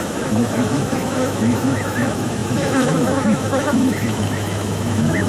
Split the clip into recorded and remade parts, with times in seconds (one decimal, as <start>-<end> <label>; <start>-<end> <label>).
0.0-5.3 remade